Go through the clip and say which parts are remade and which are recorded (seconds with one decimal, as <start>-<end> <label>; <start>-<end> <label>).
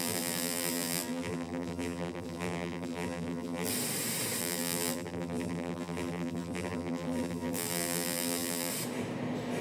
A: 0.0-3.7 remade; 3.7-4.4 recorded; 4.4-8.7 remade; 8.7-9.6 recorded